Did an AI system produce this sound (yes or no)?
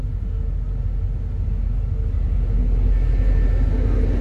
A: no